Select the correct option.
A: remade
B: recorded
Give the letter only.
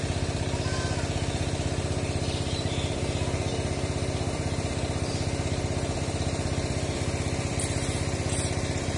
A